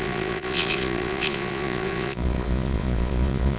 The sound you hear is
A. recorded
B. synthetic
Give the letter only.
B